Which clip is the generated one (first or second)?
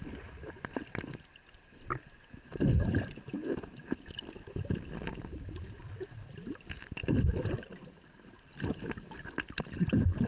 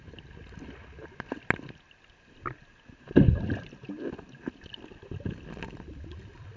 first